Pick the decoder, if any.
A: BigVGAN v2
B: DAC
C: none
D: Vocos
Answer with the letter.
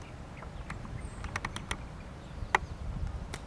C